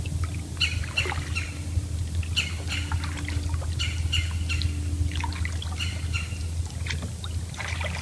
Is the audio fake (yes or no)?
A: no